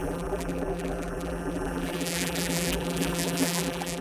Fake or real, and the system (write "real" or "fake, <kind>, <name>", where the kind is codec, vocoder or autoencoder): fake, vocoder, BigVGAN v2